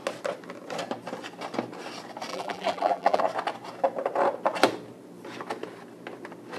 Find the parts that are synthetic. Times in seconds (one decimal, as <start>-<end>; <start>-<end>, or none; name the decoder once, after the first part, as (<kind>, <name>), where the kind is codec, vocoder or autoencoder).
2.3-3.2 (vocoder, BigVGAN v2)